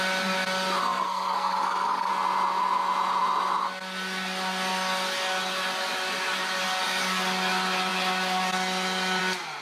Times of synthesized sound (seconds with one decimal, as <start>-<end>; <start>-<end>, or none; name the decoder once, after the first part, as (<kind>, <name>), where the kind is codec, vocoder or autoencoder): 0.8-2.1 (codec, SNAC)